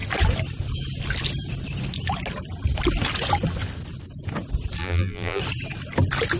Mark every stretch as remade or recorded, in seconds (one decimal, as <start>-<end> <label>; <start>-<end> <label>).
0.0-4.8 recorded; 4.8-5.4 remade; 5.4-6.4 recorded